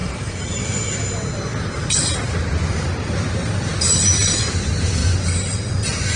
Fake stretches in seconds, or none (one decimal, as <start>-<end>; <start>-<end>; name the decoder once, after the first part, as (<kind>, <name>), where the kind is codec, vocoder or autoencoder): 0.0-0.8 (vocoder, BigVGAN v2)